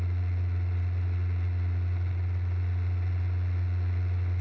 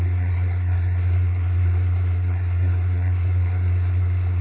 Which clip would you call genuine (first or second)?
first